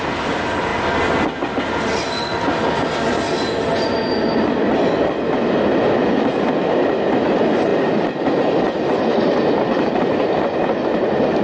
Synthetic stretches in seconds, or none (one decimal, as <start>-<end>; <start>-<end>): none